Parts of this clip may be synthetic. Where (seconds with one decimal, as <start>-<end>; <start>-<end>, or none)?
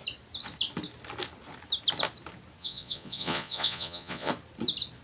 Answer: 2.6-4.3